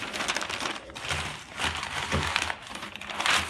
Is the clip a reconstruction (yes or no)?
no